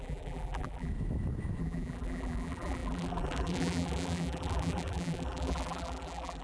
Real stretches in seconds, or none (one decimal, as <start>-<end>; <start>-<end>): 0.9-1.6